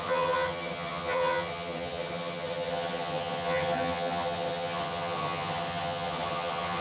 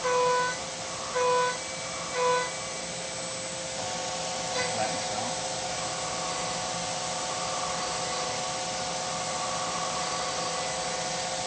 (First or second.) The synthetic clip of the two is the first